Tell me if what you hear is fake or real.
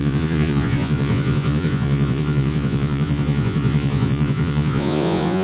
fake